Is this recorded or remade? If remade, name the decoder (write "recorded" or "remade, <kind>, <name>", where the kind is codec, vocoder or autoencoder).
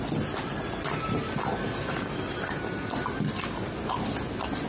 recorded